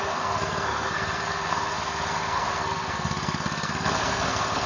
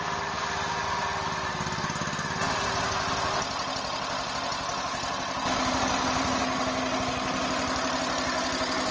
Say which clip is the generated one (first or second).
first